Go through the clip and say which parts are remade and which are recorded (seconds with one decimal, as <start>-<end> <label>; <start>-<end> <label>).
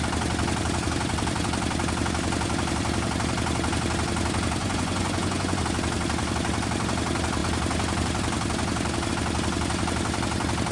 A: 0.0-4.6 recorded; 4.6-5.6 remade; 5.6-10.7 recorded